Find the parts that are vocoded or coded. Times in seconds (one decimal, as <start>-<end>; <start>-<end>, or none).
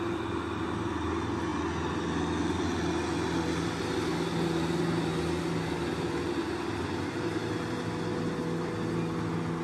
none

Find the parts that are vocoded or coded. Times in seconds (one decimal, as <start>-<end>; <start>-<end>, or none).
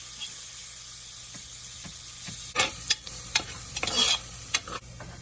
none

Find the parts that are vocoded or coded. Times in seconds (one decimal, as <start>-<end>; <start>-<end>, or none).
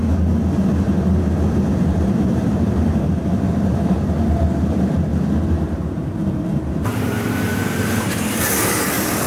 1.7-9.3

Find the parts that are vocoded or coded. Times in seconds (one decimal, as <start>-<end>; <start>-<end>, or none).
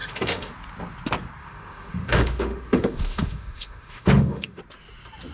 0.0-0.5; 1.4-4.6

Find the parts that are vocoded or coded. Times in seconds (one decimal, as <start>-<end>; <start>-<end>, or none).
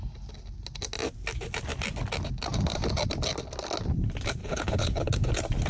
4.4-5.3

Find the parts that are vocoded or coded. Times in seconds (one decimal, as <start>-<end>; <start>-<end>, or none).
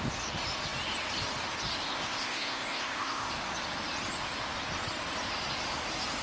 1.9-3.3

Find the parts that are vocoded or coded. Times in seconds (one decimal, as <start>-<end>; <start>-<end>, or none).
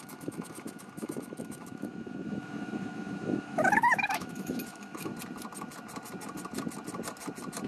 0.0-5.1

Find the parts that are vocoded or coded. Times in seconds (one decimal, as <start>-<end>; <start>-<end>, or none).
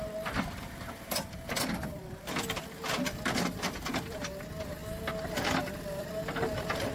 0.0-4.8; 5.6-6.9